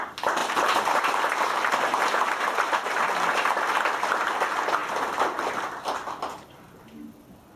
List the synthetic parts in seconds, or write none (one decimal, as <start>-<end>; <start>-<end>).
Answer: 0.4-3.0